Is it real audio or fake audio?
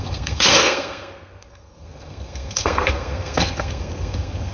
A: fake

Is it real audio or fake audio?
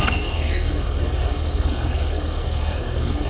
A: fake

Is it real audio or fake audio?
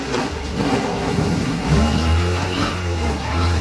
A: fake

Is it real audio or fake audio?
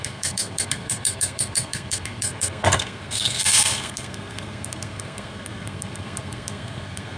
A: fake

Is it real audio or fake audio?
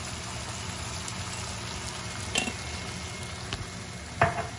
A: real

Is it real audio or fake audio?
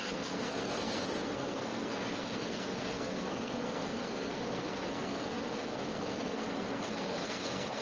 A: fake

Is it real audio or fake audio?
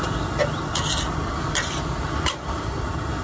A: real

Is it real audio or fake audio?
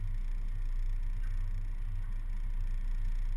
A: real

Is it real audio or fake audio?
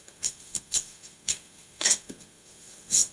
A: fake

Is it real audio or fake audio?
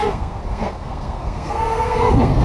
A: fake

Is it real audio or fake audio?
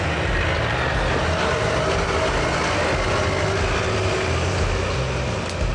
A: real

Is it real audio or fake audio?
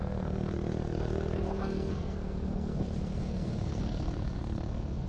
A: fake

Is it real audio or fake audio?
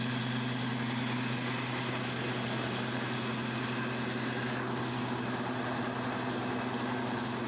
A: real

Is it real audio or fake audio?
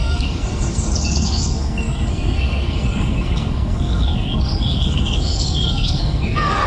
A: fake